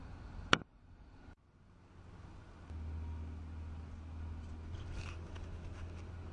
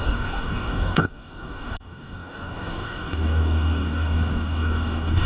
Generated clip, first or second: second